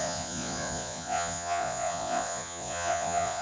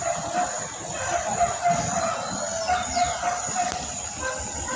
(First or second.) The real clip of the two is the second